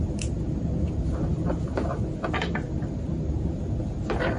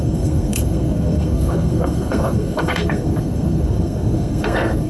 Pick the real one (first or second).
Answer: first